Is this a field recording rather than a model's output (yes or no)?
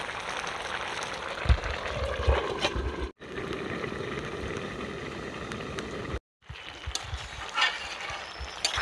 yes